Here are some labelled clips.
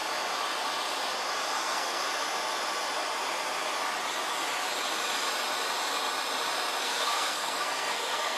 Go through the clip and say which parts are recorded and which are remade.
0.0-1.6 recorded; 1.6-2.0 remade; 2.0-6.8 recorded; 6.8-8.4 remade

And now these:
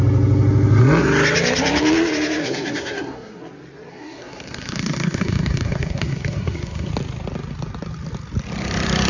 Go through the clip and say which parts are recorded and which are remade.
0.0-2.4 recorded; 2.4-3.4 remade; 3.4-3.9 recorded; 3.9-6.9 remade; 6.9-9.1 recorded

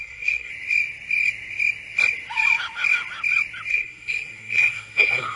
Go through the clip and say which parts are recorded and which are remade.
0.0-0.5 remade; 0.5-3.7 recorded; 3.7-5.4 remade

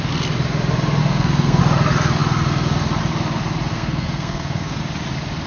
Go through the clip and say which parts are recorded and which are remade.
0.0-1.0 recorded; 1.0-1.6 remade; 1.6-3.7 recorded; 3.7-4.8 remade; 4.8-5.5 recorded